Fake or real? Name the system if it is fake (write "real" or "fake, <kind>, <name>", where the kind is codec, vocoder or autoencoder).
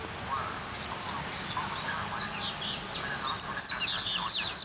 real